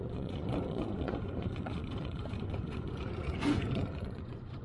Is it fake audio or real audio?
fake